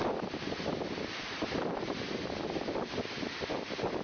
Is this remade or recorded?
recorded